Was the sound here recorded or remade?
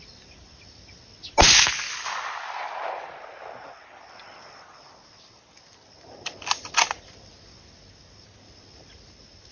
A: recorded